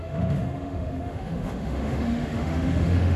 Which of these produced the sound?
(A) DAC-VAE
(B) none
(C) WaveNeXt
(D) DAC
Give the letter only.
A